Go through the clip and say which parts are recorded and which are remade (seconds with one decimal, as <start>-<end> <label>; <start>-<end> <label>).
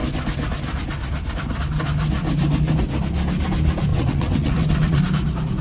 0.0-3.9 recorded; 3.9-5.0 remade; 5.0-5.6 recorded